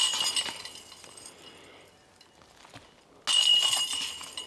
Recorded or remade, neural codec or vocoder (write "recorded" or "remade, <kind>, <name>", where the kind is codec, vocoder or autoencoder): recorded